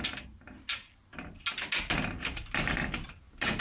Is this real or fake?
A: real